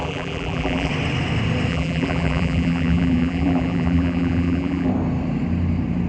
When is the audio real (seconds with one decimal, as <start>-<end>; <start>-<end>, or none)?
0.9-1.7; 4.9-6.1